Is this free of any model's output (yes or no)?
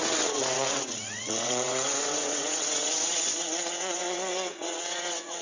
no